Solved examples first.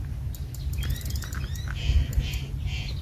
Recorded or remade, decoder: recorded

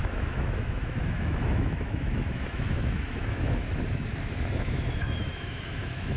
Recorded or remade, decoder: remade, autoencoder, DAC-VAE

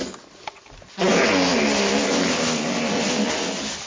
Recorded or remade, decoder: recorded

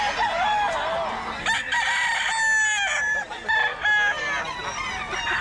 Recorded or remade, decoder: recorded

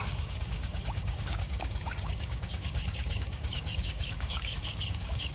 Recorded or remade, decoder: remade, codec, DAC